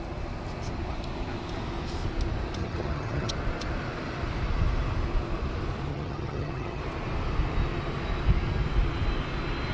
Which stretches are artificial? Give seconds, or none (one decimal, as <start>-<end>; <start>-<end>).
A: 2.6-3.3; 5.9-6.8